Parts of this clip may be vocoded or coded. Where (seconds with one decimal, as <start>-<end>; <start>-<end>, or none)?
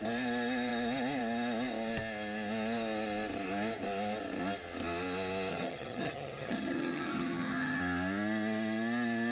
5.5-7.8